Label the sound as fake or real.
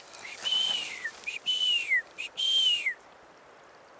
real